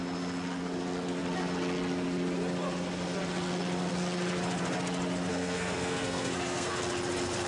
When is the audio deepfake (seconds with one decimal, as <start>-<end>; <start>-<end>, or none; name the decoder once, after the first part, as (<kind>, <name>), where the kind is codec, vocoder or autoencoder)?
5.3-6.8 (codec, SNAC)